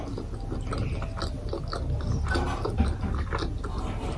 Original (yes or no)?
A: yes